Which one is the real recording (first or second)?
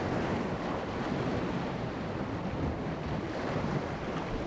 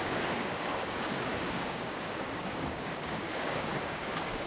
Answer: first